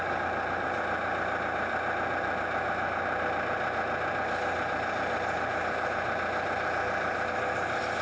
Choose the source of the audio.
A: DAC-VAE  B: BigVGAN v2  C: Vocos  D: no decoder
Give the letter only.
D